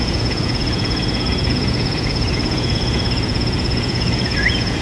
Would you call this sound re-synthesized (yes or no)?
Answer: yes